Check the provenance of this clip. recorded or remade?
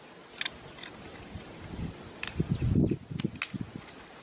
recorded